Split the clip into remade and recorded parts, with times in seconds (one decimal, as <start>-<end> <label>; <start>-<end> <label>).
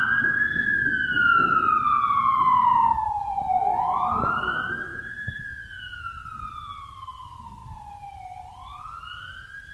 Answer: 0.0-1.9 recorded; 1.9-3.4 remade; 3.4-4.9 recorded; 4.9-6.0 remade; 6.0-7.6 recorded; 7.6-8.2 remade; 8.2-9.7 recorded